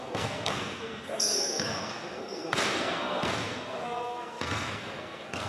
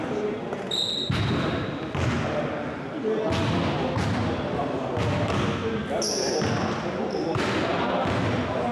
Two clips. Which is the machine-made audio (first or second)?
first